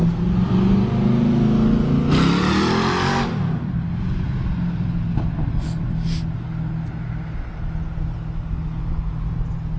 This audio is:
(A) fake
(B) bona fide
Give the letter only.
B